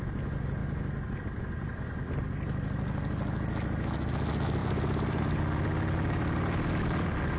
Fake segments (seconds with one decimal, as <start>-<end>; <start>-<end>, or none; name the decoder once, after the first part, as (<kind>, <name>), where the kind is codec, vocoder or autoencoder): 4.6-5.4 (vocoder, BigVGAN v2)